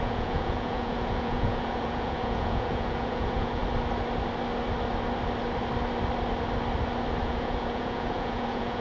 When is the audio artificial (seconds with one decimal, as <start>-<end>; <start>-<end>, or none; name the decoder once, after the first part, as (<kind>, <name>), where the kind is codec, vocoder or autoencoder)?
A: 0.0-3.6 (vocoder, Vocos); 7.2-8.8

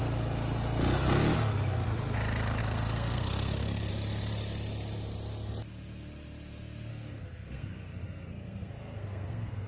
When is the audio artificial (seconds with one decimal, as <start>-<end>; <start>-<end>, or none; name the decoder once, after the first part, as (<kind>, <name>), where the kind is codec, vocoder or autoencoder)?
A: 2.6-3.9 (codec, SNAC); 6.9-9.7

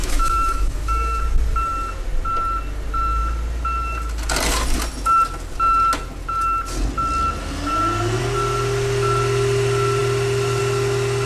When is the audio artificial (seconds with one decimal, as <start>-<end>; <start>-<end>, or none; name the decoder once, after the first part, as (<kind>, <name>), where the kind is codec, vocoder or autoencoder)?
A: 0.0-1.2 (autoencoder, DAC-VAE)

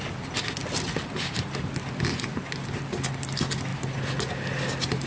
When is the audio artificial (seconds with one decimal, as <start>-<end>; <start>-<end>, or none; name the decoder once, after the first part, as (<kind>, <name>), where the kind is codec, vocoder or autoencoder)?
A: none

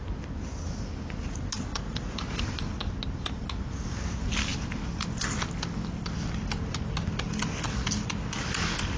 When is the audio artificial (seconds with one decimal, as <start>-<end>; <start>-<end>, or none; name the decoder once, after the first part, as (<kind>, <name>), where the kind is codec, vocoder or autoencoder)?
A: 1.7-2.4 (vocoder, Vocos)